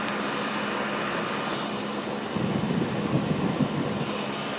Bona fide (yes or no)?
yes